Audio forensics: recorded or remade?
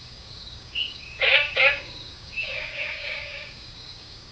remade